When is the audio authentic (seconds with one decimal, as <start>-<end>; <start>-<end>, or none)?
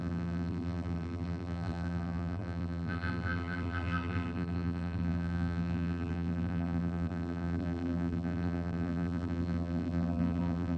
none